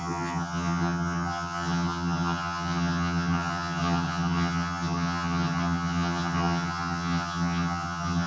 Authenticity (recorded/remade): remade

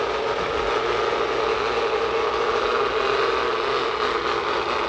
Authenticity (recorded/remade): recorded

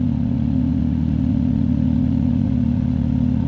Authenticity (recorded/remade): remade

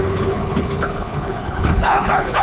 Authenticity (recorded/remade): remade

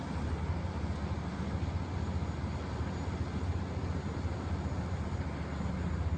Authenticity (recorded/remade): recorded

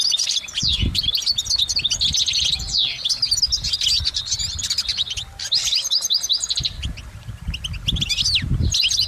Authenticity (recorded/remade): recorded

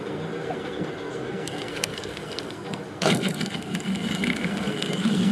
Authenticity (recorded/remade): remade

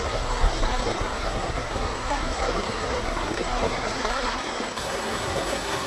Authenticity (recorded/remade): remade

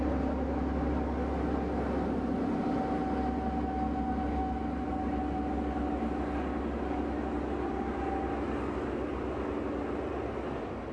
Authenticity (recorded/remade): recorded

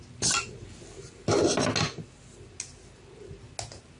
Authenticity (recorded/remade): recorded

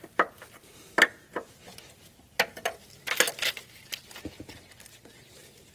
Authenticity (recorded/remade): recorded